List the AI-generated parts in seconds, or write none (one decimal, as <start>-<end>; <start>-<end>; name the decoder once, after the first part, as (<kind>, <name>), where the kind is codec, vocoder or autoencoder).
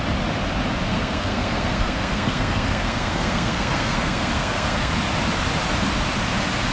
0.9-4.9 (codec, SNAC)